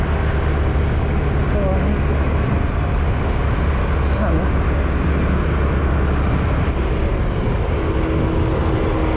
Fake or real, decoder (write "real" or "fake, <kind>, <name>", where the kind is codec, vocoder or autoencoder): real